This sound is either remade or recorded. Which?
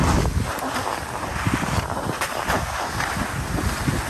recorded